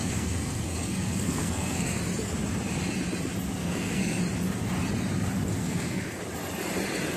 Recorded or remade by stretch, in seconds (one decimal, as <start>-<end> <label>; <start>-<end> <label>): 0.0-2.0 remade; 2.0-3.6 recorded; 3.6-4.2 remade; 4.2-5.6 recorded; 5.6-6.2 remade; 6.2-7.2 recorded